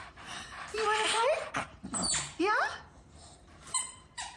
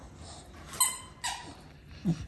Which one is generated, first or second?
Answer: first